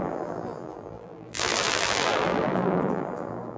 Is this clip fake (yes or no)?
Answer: yes